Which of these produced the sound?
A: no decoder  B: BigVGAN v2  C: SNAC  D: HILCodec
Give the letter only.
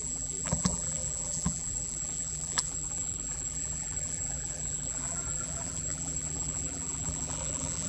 B